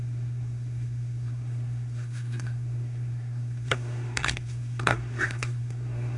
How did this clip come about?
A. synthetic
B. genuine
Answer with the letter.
A